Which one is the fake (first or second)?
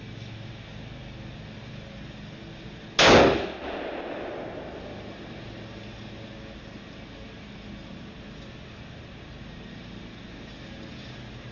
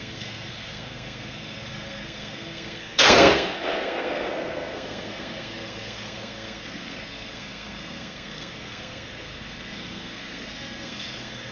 second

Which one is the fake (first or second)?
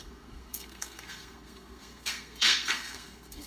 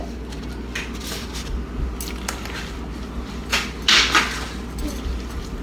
first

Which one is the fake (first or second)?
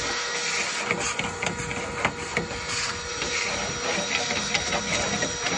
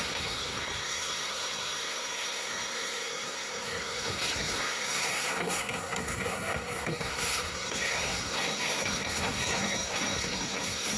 second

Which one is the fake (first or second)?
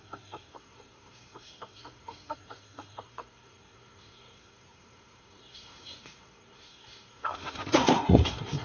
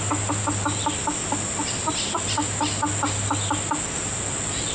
first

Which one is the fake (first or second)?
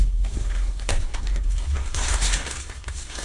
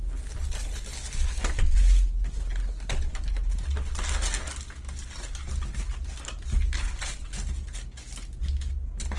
first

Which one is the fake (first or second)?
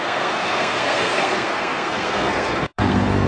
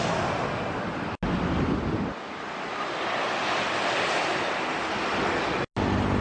first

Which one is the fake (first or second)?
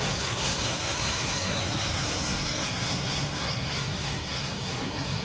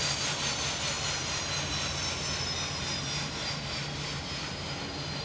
first